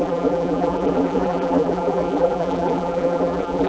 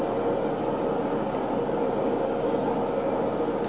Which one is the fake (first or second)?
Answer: first